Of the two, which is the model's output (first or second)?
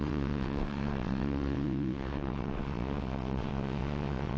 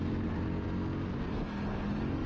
first